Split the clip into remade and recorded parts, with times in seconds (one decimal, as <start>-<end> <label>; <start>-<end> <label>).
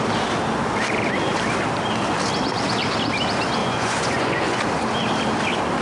0.0-3.6 recorded; 3.6-4.6 remade; 4.6-5.8 recorded